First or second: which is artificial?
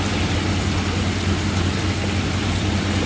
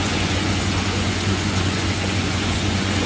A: second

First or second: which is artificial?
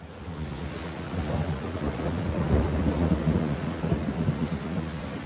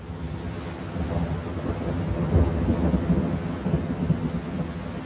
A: first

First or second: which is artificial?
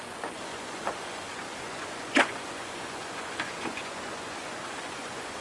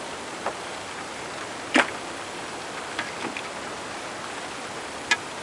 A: first